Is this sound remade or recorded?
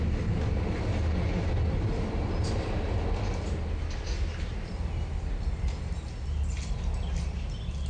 recorded